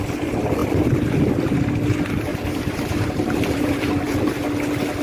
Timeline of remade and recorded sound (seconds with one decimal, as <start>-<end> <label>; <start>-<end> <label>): 0.0-2.3 recorded; 2.3-4.4 remade; 4.4-5.0 recorded

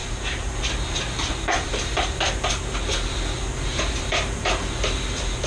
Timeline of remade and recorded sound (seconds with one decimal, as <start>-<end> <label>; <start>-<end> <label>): 0.0-0.6 remade; 0.6-3.7 recorded; 3.7-4.6 remade; 4.6-5.5 recorded

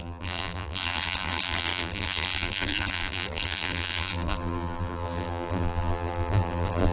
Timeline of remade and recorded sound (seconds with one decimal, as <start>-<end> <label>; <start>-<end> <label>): 0.0-6.9 remade

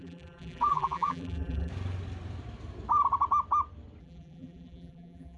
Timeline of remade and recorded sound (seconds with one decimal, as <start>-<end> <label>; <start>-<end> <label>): 0.0-1.7 remade; 1.7-4.0 recorded; 4.0-5.4 remade

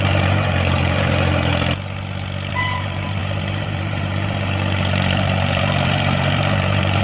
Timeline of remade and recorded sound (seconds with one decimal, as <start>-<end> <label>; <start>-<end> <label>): 0.0-1.5 remade; 1.5-2.5 recorded; 2.5-7.0 remade

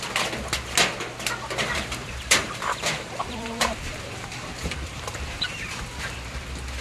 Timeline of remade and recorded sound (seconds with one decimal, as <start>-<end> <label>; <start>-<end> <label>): 0.0-1.6 recorded; 1.6-5.7 remade; 5.7-6.8 recorded

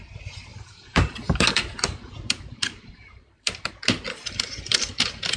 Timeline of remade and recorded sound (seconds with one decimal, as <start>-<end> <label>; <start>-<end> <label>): 0.0-0.5 recorded; 0.5-3.7 remade; 3.7-5.4 recorded